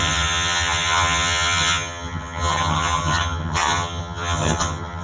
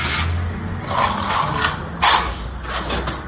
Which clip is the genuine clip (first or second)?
second